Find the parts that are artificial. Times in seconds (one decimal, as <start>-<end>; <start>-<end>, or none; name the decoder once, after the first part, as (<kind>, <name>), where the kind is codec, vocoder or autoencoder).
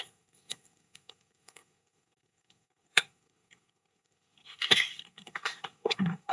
0.0-6.3 (codec, SNAC)